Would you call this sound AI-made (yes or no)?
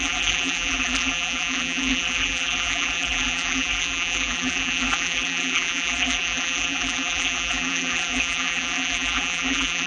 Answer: yes